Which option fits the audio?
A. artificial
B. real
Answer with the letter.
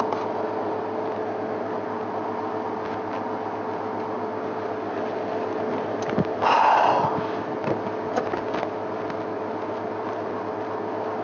B